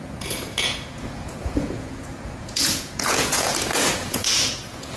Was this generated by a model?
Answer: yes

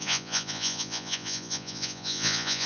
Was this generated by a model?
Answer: yes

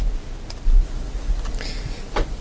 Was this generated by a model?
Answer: no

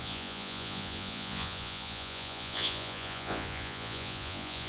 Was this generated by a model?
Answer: yes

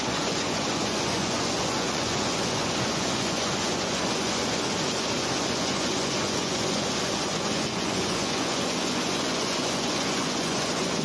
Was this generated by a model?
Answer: yes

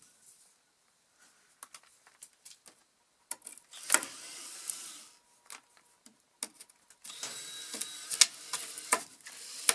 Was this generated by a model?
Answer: no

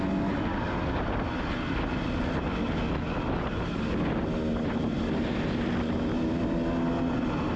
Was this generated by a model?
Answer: no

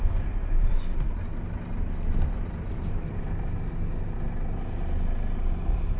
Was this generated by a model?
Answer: no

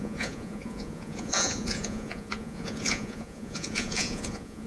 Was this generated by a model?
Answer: yes